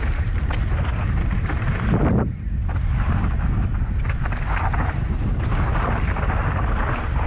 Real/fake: real